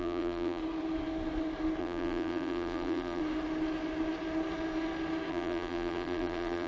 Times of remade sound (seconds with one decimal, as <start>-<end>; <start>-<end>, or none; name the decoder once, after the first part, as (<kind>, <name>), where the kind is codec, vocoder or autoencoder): 0.0-0.6 (vocoder, BigVGAN v2); 1.8-3.2; 5.3-6.7